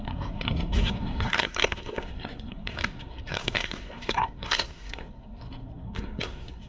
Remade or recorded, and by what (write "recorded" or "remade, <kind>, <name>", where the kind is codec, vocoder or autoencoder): remade, codec, SNAC